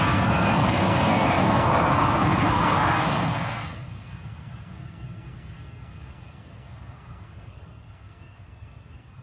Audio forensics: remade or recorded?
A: remade